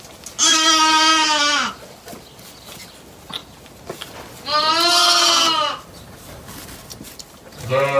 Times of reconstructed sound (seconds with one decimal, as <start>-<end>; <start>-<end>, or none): 0.5-1.7